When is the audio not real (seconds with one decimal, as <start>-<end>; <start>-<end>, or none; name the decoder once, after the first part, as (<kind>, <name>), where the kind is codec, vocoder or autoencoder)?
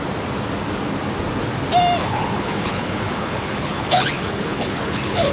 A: 2.0-5.3 (codec, HILCodec)